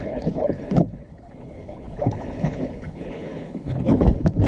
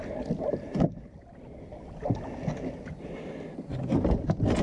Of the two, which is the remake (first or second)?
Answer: first